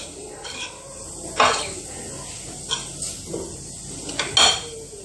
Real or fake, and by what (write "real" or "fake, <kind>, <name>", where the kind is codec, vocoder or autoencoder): real